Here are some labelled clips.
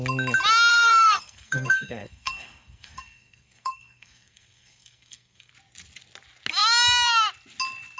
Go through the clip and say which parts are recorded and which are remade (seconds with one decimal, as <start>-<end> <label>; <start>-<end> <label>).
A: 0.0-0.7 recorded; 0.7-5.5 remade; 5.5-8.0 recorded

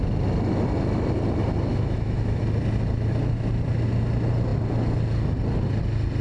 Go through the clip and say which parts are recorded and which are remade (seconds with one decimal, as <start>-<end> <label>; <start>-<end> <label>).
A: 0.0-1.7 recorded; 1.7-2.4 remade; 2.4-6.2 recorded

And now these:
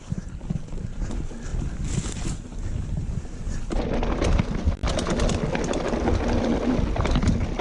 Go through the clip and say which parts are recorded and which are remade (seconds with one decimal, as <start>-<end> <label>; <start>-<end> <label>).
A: 0.0-7.6 recorded

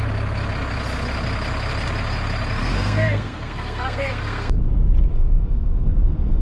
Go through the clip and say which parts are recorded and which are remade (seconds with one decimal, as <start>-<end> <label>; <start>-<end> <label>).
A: 0.0-2.6 recorded; 2.6-4.6 remade; 4.6-5.1 recorded; 5.1-6.4 remade

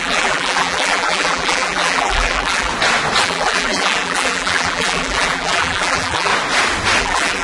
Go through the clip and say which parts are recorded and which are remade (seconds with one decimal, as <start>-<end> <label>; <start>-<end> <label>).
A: 0.0-2.7 remade; 2.7-3.2 recorded; 3.2-6.3 remade; 6.3-7.0 recorded; 7.0-7.4 remade

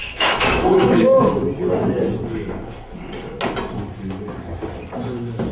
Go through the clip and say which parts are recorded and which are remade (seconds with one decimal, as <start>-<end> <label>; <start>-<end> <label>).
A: 0.0-1.3 remade; 1.3-5.5 recorded

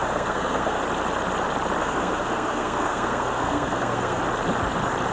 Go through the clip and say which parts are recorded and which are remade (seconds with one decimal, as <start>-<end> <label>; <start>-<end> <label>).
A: 0.0-0.8 remade; 0.8-1.8 recorded; 1.8-4.2 remade; 4.2-5.1 recorded